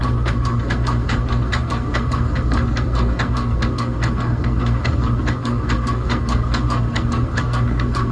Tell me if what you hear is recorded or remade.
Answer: remade